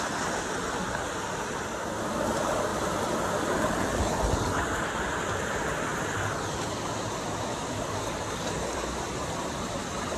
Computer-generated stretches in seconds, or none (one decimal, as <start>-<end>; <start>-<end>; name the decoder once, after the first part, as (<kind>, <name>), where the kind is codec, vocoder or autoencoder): 7.5-8.5 (codec, DAC)